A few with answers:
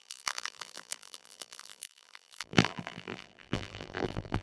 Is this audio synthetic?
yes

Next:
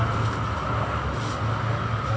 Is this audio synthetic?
no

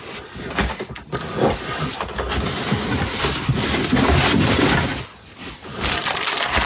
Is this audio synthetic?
no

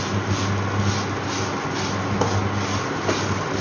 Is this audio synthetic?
no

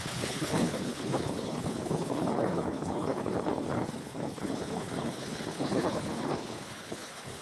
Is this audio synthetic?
yes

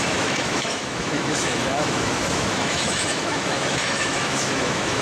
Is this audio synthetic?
yes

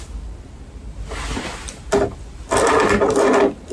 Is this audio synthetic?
no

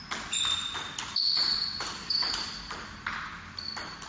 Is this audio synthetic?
no